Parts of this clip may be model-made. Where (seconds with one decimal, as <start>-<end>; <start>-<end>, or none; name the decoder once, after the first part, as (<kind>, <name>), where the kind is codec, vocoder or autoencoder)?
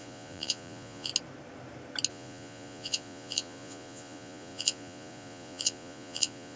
0.0-1.1 (vocoder, Vocos); 2.1-6.6